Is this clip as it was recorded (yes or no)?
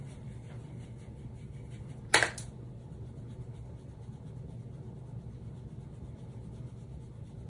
yes